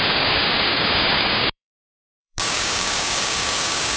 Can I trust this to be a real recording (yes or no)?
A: no